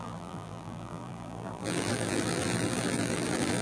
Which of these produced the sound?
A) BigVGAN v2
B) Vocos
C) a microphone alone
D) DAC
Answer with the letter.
A